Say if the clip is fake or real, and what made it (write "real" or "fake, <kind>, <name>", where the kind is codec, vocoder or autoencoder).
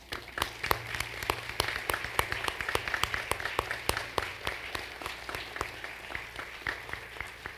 real